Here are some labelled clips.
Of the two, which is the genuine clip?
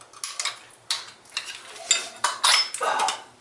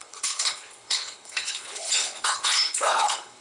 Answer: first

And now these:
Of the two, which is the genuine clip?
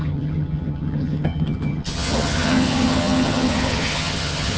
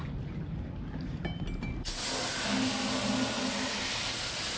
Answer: second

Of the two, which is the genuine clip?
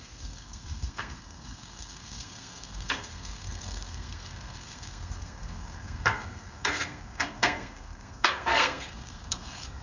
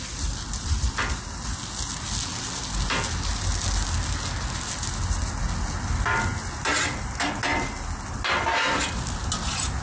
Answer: second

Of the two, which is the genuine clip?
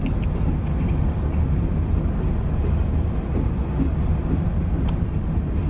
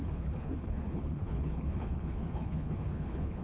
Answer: first